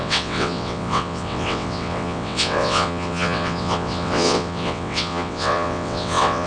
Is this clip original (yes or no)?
no